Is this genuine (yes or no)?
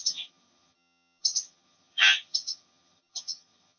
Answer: no